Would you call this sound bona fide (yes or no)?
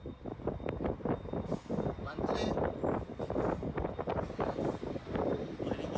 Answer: yes